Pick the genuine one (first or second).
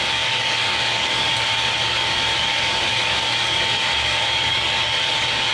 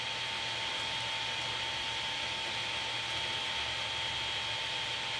second